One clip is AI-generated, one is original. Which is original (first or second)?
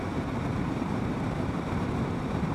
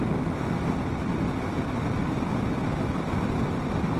second